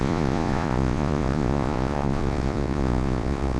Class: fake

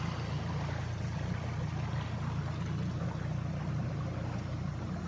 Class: real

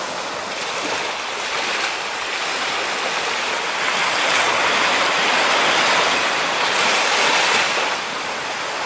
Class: real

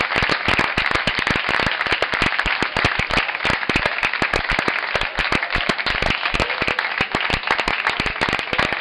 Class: real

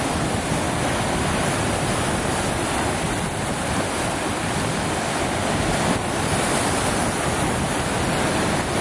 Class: real